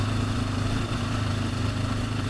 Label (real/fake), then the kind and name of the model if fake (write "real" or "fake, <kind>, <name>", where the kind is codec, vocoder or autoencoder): fake, vocoder, BigVGAN v2